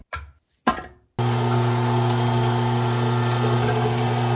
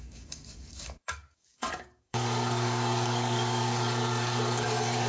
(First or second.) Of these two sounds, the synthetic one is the second